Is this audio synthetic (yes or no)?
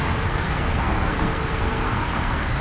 yes